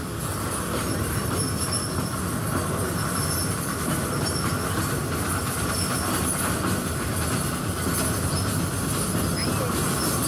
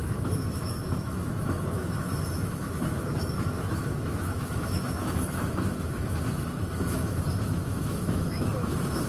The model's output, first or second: second